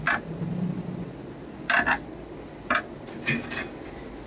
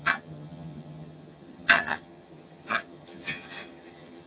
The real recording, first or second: first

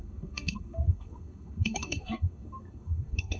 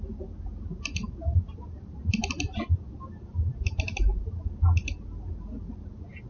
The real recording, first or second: second